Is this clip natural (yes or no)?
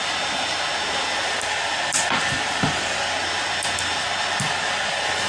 yes